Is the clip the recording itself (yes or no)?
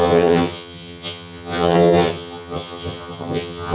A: no